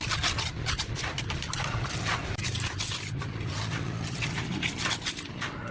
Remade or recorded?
recorded